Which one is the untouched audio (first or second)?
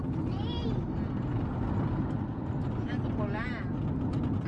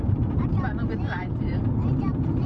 first